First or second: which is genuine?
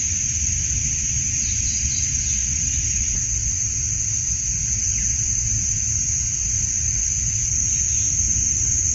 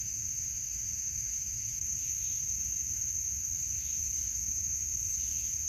first